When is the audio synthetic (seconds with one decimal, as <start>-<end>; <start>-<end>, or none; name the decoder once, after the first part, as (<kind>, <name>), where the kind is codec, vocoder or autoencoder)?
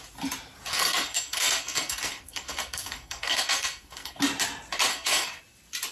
0.7-4.2 (codec, SNAC); 4.9-5.4